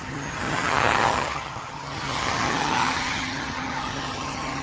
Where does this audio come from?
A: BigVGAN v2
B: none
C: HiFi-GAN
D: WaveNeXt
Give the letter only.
C